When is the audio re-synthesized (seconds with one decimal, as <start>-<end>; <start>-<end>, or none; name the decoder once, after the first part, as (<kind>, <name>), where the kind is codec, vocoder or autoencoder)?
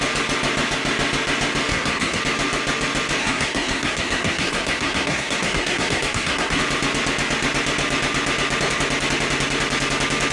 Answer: 1.7-2.2 (codec, SNAC); 3.2-6.6